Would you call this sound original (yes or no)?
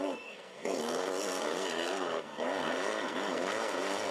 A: no